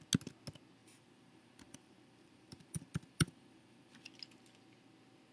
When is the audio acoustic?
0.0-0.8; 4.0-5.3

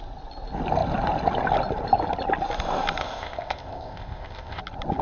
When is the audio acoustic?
0.0-3.0; 4.6-5.0

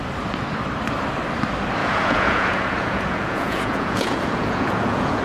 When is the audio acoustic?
0.0-1.8

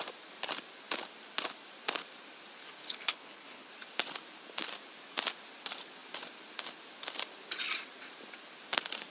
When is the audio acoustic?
0.0-2.8; 3.7-9.1

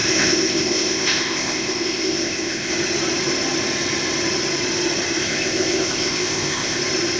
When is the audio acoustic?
2.7-5.2; 6.8-7.2

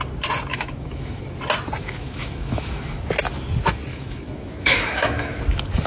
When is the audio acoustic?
0.0-0.5; 1.2-1.8; 3.0-3.9; 5.4-5.9